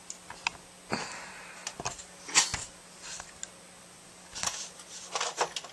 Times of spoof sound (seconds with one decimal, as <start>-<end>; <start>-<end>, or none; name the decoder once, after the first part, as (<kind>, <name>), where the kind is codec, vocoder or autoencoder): none